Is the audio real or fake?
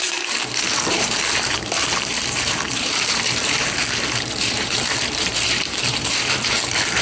fake